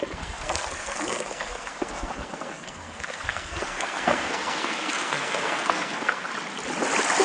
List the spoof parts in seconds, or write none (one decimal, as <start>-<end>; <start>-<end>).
0.0-6.3